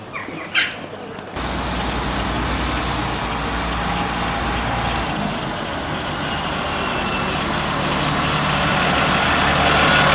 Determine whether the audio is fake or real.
real